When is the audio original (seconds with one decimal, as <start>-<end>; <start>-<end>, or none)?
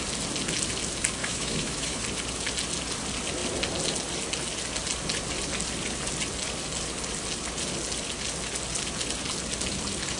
0.0-1.2; 2.0-10.2